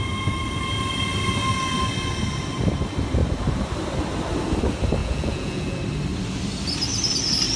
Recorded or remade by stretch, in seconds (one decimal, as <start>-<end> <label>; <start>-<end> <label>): 0.0-5.0 recorded; 5.0-5.8 remade; 5.8-7.6 recorded